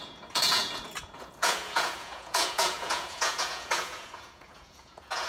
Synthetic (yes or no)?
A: yes